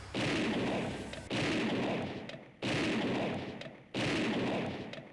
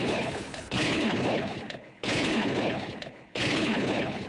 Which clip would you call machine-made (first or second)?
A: second